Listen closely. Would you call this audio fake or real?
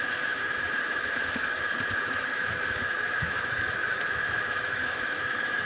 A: fake